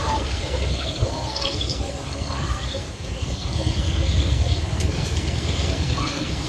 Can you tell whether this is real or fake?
fake